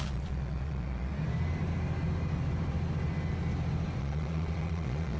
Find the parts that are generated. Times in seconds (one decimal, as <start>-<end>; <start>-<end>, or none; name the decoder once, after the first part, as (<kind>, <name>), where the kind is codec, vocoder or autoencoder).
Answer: 0.0-1.1 (vocoder, Vocos); 4.0-5.2